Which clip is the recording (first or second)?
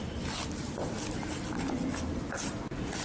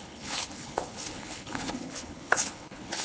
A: first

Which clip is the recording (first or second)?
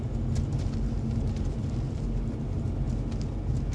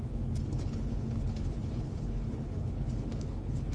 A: first